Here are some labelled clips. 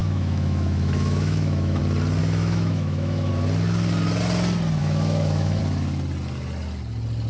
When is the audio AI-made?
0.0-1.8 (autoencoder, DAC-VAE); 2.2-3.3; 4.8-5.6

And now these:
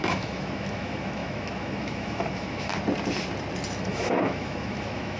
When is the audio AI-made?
0.0-2.7 (autoencoder, DAC-VAE); 3.8-5.2

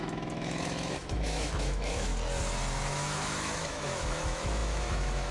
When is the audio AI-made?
0.0-2.1 (autoencoder, DAC-VAE); 2.9-5.3

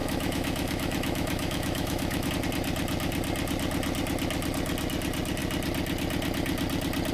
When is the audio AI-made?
0.0-2.3 (autoencoder, DAC-VAE)

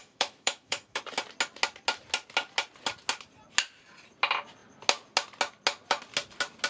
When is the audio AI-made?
0.0-1.0 (autoencoder, DAC-VAE)

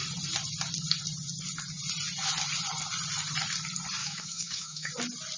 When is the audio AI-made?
4.0-4.9 (autoencoder, DAC-VAE)

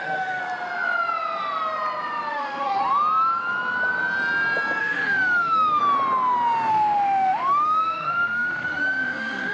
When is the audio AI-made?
0.0-0.4 (autoencoder, DAC-VAE); 2.3-2.8; 4.8-5.8; 6.7-9.5